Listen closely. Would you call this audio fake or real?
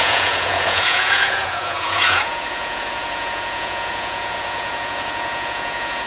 fake